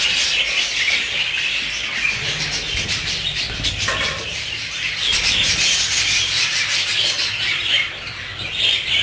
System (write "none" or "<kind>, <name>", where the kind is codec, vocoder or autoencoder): vocoder, BigVGAN v2